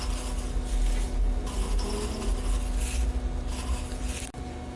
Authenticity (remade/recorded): recorded